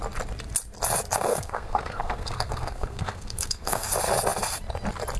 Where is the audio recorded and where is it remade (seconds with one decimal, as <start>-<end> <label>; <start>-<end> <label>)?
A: 0.0-1.3 recorded; 1.3-3.9 remade; 3.9-5.2 recorded